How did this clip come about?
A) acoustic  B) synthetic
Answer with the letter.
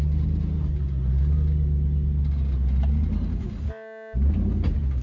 A